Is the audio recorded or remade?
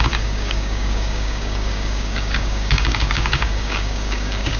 remade